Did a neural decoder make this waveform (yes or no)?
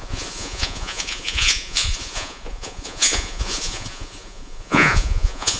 yes